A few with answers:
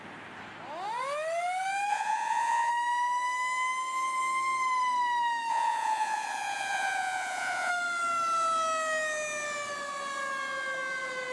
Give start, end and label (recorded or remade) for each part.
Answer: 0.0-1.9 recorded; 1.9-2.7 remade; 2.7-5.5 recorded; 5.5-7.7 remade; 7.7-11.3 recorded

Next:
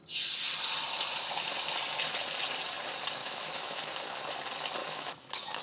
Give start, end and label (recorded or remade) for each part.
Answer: 0.0-3.2 recorded; 3.2-3.9 remade; 3.9-4.8 recorded; 4.8-5.6 remade